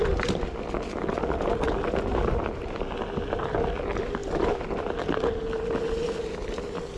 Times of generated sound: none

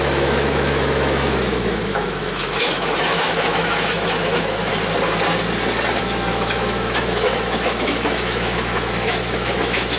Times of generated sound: 0.0-4.7 (autoencoder, DAC-VAE); 6.0-10.0

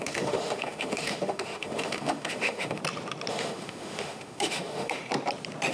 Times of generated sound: 0.0-2.8 (autoencoder, DAC-VAE); 3.3-5.0

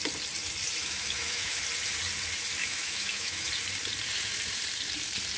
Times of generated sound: 0.8-1.6 (autoencoder, DAC-VAE); 2.6-3.5

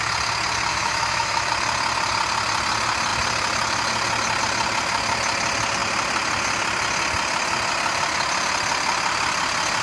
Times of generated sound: 0.7-1.5 (autoencoder, DAC-VAE)

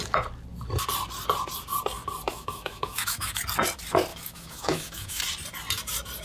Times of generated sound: 2.3-3.4 (autoencoder, DAC-VAE); 4.1-5.2

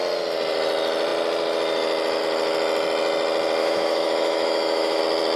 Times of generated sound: 3.6-5.0 (autoencoder, DAC-VAE)

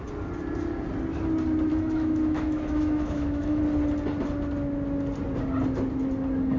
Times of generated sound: 1.7-3.6 (autoencoder, DAC-VAE)